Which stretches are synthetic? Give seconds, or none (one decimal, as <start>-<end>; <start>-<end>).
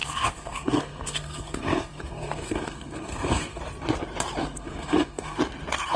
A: 0.0-3.6; 4.4-5.4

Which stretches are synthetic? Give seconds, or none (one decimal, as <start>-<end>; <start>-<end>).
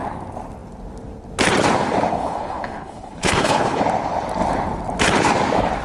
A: 2.1-3.8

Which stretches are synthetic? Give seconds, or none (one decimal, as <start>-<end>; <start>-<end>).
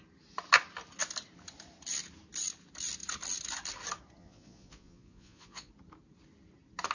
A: 4.2-5.7